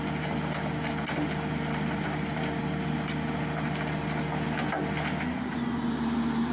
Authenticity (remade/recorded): recorded